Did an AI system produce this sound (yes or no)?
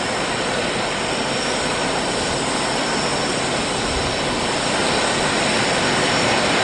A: no